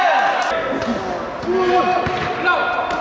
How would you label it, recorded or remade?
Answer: recorded